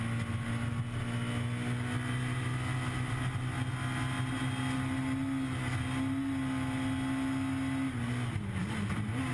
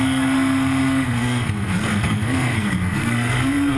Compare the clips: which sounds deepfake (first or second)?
second